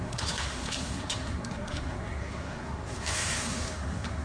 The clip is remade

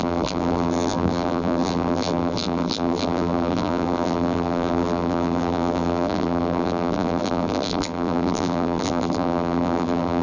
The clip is remade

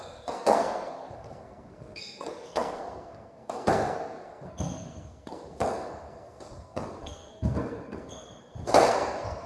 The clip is remade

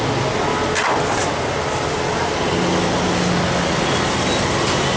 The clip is recorded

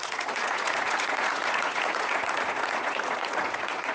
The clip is remade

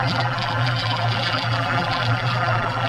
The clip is remade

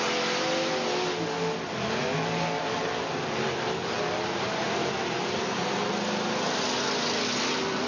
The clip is recorded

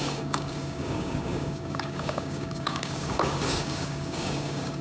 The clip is remade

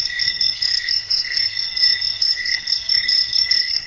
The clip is remade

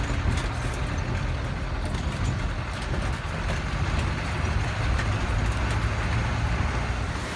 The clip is recorded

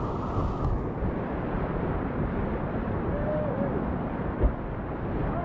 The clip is recorded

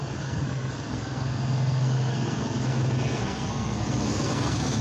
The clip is remade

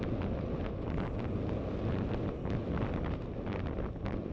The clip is recorded